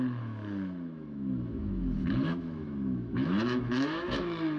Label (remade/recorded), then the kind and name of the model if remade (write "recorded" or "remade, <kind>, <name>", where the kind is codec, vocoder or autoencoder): remade, autoencoder, DAC-VAE